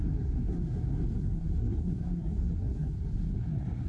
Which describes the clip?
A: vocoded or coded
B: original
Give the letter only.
A